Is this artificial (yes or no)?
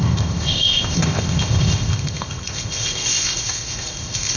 yes